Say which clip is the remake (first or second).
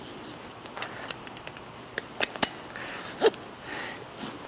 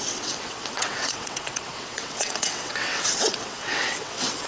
second